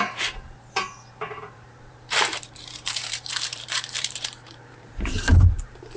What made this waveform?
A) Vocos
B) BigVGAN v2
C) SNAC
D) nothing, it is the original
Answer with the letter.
B